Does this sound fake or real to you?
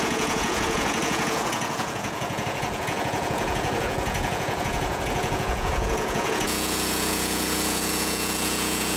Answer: fake